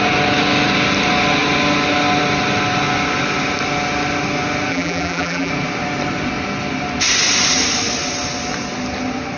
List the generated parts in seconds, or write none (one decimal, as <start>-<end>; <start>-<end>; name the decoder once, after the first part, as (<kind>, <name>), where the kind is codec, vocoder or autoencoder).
4.7-5.5 (vocoder, BigVGAN v2)